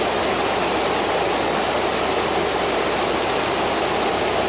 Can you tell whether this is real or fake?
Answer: real